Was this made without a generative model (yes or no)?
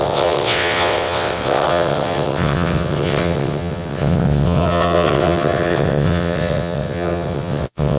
no